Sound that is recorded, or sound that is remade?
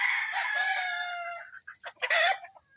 recorded